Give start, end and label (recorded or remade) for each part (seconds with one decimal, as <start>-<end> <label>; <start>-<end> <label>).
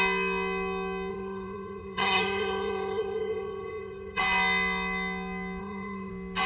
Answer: 0.0-1.1 recorded; 1.1-4.2 remade; 4.2-5.6 recorded; 5.6-6.1 remade; 6.1-6.5 recorded